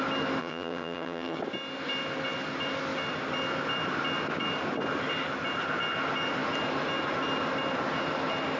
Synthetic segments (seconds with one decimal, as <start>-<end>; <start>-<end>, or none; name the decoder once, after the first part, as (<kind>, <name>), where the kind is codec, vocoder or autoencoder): 0.4-1.4 (vocoder, HiFi-GAN)